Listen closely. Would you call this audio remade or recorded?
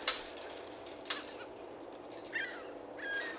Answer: remade